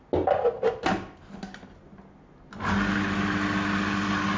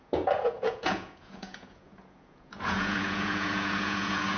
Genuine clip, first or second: first